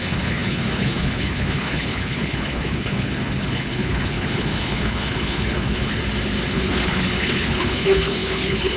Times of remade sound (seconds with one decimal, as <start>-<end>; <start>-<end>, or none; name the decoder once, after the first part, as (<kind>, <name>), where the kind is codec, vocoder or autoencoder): 0.0-6.0 (codec, HILCodec); 6.5-8.8